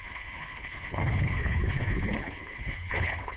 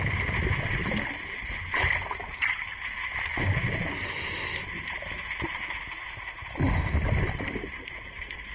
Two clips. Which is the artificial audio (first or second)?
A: first